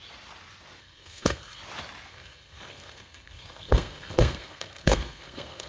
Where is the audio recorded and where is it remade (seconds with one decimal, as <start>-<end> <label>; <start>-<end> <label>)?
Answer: 0.0-0.8 recorded; 0.8-1.6 remade; 1.6-2.1 recorded; 2.1-5.7 remade